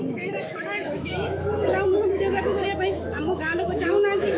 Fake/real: fake